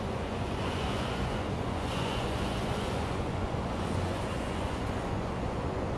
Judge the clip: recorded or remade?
remade